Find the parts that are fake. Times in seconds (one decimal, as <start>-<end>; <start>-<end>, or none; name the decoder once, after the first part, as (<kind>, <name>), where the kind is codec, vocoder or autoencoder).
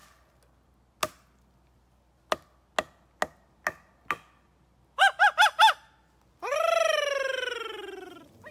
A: none